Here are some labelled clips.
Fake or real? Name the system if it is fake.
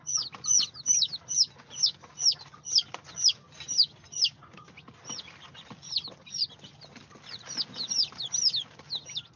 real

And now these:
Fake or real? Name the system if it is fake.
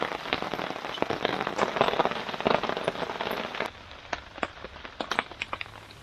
real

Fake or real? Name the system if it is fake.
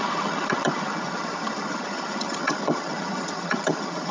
fake, vocoder, HiFi-GAN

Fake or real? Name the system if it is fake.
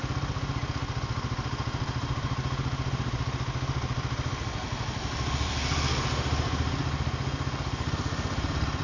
real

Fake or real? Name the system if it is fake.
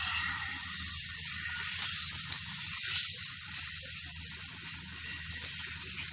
real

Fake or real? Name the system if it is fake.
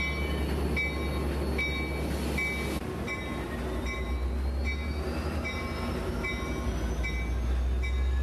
real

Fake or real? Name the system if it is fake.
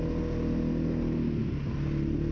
real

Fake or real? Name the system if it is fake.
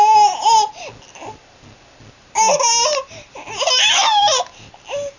real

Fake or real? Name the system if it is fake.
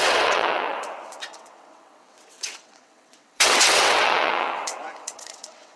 fake, vocoder, WaveNeXt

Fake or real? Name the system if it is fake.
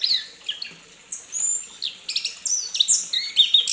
real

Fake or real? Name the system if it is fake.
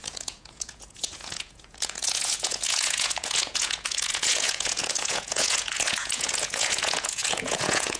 fake, vocoder, Vocos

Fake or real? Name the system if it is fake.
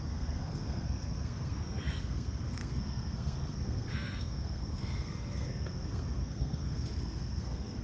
fake, codec, SNAC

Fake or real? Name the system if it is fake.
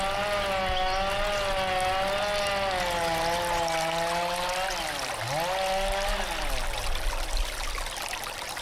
real